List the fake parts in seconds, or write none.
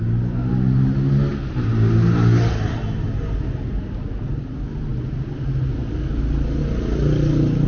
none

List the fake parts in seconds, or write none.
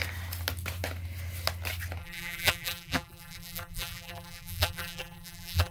2.0-5.7 (vocoder, BigVGAN v2)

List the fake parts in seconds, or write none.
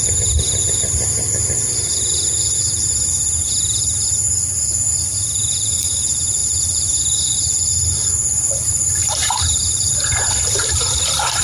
9.0-9.9 (vocoder, BigVGAN v2)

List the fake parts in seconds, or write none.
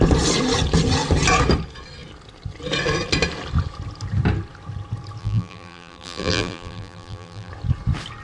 5.2-7.5 (vocoder, BigVGAN v2)